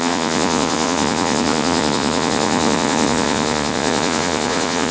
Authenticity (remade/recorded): remade